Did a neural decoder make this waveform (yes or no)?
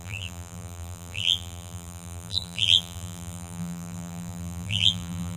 yes